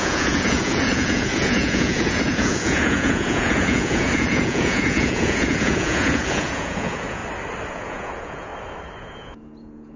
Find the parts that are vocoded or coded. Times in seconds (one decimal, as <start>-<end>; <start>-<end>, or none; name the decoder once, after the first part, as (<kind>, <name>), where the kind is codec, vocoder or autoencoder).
0.0-7.2 (vocoder, Vocos); 7.7-8.5; 9.0-10.0